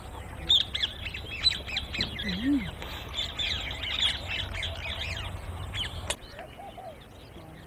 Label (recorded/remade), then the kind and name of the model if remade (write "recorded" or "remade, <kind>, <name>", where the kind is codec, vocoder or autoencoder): recorded